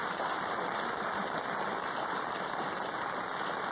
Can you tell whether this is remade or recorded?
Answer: remade